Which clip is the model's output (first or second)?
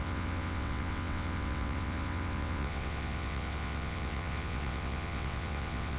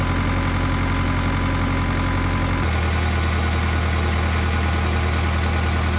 first